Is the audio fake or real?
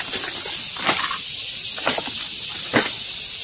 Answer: real